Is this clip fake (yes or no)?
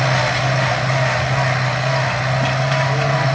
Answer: no